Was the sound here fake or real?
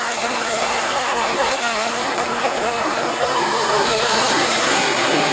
fake